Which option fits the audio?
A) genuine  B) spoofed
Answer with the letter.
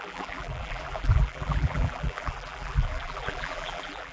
B